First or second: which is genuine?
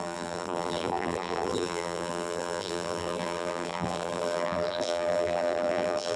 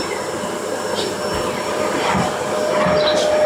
second